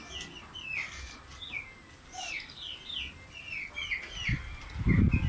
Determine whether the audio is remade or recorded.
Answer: recorded